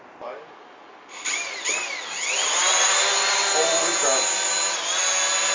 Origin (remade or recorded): recorded